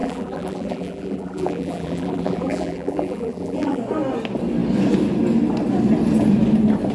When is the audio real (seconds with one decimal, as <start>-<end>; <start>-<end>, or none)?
3.8-6.9